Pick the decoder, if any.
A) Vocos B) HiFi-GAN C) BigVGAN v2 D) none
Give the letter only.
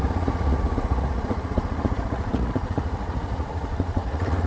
A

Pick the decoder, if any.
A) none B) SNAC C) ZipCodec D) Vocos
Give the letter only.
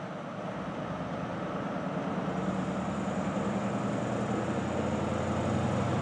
A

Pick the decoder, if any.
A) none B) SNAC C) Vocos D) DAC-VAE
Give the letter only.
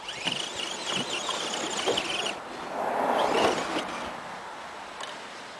A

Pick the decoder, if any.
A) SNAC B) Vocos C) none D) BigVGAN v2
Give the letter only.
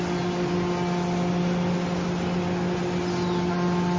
C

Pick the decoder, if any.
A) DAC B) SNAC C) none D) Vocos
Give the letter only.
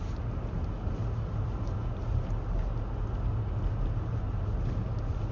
C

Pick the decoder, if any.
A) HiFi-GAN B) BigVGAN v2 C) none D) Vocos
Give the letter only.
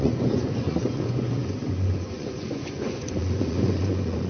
D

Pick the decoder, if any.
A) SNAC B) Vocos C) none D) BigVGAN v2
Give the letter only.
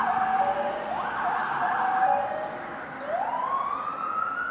C